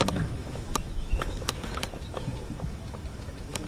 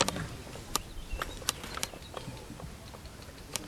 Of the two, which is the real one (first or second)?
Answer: second